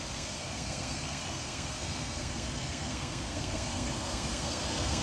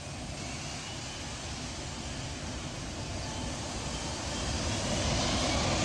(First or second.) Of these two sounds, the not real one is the first